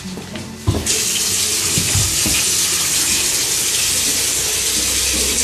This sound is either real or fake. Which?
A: fake